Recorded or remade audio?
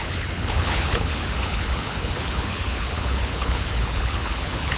remade